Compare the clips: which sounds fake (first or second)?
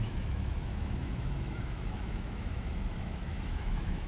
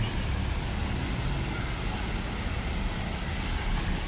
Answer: first